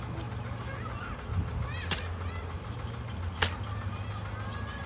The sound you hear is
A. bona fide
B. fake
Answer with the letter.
A